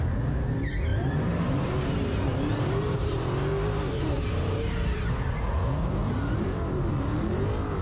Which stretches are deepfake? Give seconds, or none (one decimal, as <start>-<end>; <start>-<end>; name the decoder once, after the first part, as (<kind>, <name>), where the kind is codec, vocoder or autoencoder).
0.9-5.1 (vocoder, BigVGAN v2); 6.0-6.8